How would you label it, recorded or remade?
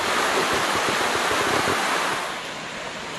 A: recorded